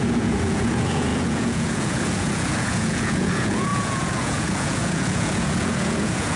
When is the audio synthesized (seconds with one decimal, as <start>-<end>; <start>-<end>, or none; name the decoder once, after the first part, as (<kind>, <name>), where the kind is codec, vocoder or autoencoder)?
0.0-6.4 (vocoder, Vocos)